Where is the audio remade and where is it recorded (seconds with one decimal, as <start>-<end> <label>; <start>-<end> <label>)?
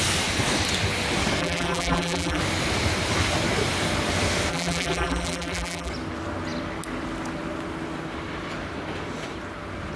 0.0-1.4 recorded; 1.4-2.4 remade; 2.4-4.5 recorded; 4.5-5.9 remade; 5.9-10.0 recorded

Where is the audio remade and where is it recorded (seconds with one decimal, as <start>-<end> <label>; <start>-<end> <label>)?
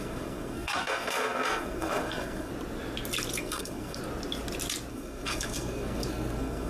0.0-2.5 remade; 2.5-3.4 recorded; 3.4-4.0 remade; 4.0-4.9 recorded; 4.9-6.7 remade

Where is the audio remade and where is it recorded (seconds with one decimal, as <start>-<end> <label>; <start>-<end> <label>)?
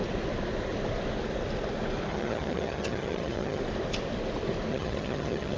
0.0-2.1 recorded; 2.1-3.6 remade; 3.6-4.7 recorded; 4.7-5.6 remade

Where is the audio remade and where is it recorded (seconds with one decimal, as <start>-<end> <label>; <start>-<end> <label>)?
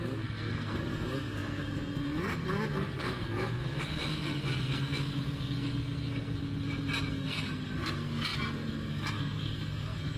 0.0-6.4 remade; 6.4-7.1 recorded; 7.1-10.2 remade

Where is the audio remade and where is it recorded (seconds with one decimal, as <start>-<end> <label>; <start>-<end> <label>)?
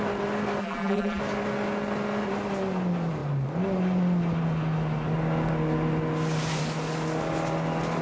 0.0-0.6 recorded; 0.6-1.2 remade; 1.2-8.0 recorded